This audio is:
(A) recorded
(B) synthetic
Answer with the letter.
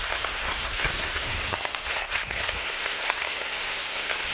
B